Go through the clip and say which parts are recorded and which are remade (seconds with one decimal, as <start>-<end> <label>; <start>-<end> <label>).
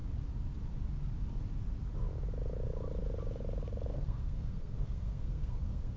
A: 0.0-3.9 recorded; 3.9-6.0 remade